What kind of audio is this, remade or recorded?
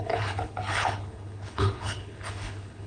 remade